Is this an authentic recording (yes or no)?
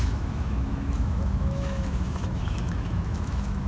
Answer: no